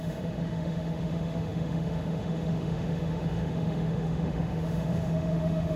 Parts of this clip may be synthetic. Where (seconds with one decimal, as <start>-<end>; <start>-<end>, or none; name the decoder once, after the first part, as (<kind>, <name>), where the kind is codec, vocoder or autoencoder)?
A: 0.0-5.8 (autoencoder, DAC-VAE)